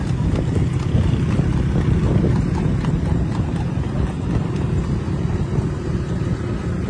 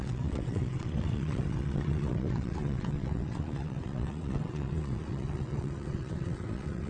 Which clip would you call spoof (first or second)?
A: second